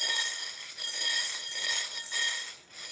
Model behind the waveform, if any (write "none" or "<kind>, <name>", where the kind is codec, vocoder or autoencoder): none